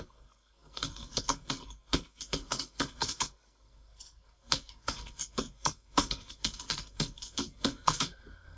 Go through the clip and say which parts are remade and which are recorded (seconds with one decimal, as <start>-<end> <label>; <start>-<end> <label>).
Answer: 0.0-8.6 remade